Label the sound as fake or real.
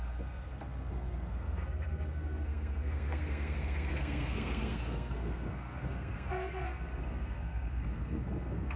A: fake